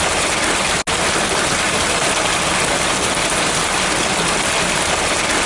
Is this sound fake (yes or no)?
no